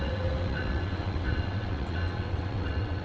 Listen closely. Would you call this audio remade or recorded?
remade